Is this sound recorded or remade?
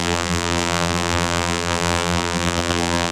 remade